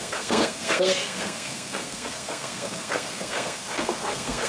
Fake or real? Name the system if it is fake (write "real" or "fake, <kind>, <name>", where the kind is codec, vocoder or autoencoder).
fake, codec, SNAC